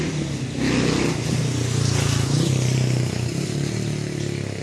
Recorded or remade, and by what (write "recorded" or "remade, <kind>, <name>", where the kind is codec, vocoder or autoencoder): recorded